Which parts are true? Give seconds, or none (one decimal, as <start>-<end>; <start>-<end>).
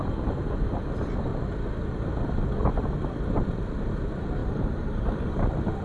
1.3-3.9